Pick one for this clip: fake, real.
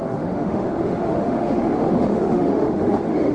fake